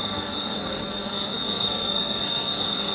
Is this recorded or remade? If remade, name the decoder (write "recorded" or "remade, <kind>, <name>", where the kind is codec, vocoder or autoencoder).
remade, codec, SNAC